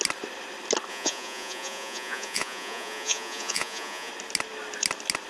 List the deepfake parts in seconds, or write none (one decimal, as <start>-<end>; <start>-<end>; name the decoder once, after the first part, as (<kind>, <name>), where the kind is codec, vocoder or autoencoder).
0.9-4.1 (vocoder, Vocos)